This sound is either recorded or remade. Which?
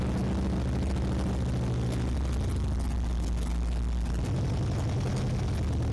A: recorded